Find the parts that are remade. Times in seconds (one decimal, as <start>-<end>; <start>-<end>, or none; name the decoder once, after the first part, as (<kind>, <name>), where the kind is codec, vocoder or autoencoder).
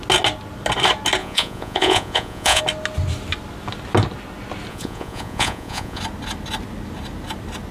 1.2-2.6 (vocoder, Vocos); 4.7-6.0